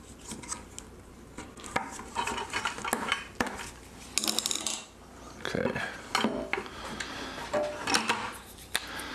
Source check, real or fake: real